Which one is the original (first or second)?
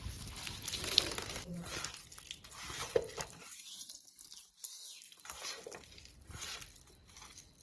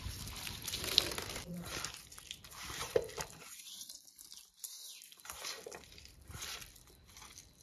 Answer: first